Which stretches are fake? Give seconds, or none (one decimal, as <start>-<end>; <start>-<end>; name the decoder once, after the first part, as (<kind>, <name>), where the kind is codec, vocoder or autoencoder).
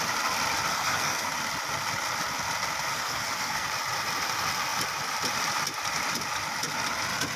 0.7-1.3 (codec, SNAC); 2.9-3.7